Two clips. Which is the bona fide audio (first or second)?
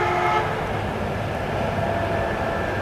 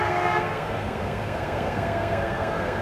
first